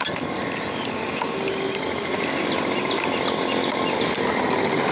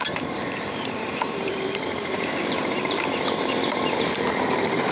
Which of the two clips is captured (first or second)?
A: first